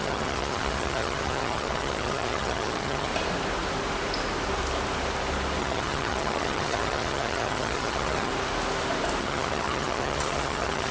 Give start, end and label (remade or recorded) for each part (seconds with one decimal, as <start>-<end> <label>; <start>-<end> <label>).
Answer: 0.0-3.1 remade; 3.1-5.6 recorded; 5.6-8.3 remade; 8.3-9.2 recorded; 9.2-10.9 remade